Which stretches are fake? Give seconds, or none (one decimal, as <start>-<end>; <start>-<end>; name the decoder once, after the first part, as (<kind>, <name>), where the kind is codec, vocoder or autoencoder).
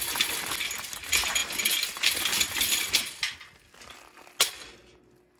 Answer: none